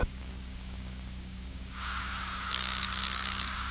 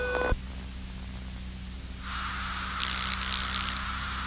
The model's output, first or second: first